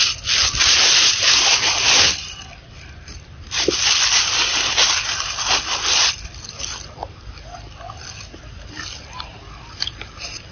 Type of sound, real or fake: fake